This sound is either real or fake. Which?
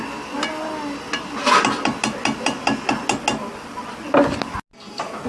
real